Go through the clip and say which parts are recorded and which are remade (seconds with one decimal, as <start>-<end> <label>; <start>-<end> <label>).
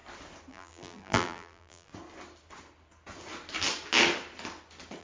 0.0-0.5 recorded; 0.5-1.9 remade; 1.9-5.0 recorded